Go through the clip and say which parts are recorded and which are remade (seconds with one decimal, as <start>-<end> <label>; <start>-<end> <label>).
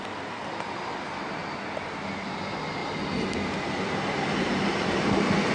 0.0-5.5 recorded